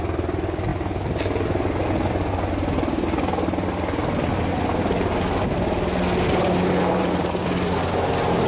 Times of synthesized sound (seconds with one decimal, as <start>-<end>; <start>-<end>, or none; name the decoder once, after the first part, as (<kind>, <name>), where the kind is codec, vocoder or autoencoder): none